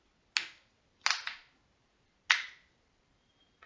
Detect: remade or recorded recorded